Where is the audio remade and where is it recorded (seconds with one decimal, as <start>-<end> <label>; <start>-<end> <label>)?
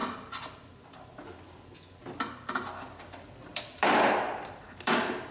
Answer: 0.0-3.2 recorded; 3.2-3.8 remade; 3.8-4.6 recorded; 4.6-5.3 remade